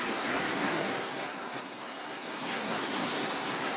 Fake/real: fake